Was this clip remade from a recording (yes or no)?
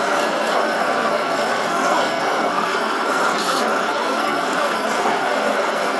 yes